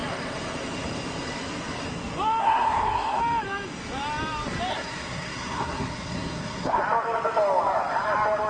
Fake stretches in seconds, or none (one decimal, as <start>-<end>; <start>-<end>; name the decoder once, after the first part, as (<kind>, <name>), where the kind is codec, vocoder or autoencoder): 2.4-3.2 (codec, SNAC); 4.7-6.8